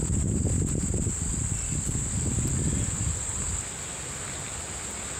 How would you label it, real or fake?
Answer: real